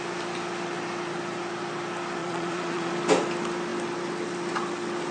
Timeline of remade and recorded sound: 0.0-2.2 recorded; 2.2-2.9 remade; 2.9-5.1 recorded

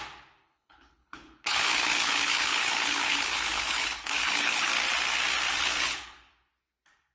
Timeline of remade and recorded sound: 0.0-0.4 recorded; 0.4-4.7 remade; 4.7-5.5 recorded; 5.5-6.3 remade; 6.3-7.1 recorded

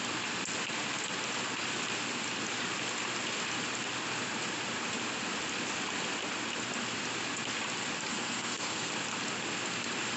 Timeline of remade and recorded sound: 0.0-8.1 recorded; 8.1-8.9 remade; 8.9-10.2 recorded

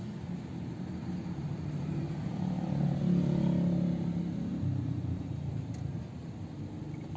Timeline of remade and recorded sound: 0.0-1.0 recorded; 1.0-3.0 remade; 3.0-4.5 recorded; 4.5-5.2 remade; 5.2-7.2 recorded

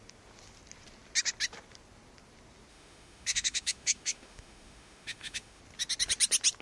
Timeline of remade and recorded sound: 0.0-2.7 recorded; 2.7-5.6 remade; 5.6-6.6 recorded

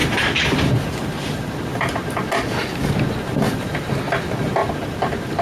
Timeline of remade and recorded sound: 0.0-5.4 recorded